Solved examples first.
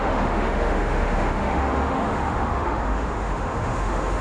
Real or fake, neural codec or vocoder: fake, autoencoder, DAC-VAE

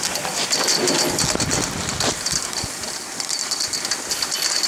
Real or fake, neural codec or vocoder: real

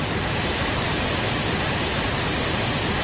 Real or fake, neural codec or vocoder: real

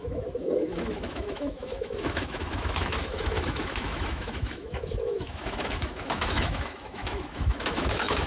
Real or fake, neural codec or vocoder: fake, autoencoder, DAC-VAE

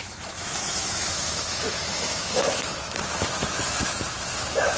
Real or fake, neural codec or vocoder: fake, autoencoder, DAC-VAE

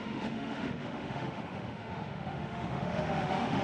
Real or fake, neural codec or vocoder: fake, autoencoder, DAC-VAE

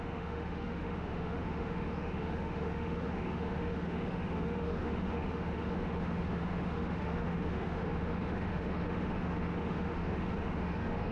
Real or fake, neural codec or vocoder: fake, autoencoder, DAC-VAE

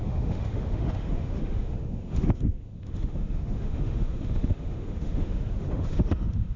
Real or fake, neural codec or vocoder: fake, autoencoder, DAC-VAE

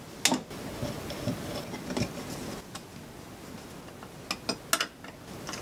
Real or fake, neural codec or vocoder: real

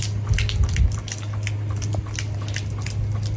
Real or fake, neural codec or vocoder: real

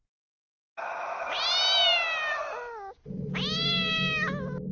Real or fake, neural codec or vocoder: real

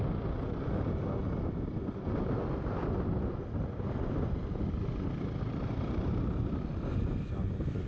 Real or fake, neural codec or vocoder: real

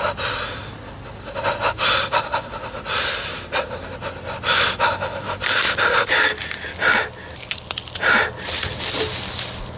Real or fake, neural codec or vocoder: real